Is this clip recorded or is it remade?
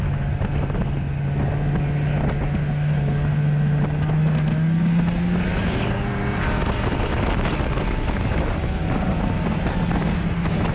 recorded